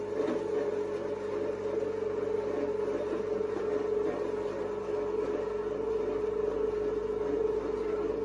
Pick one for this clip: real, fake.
real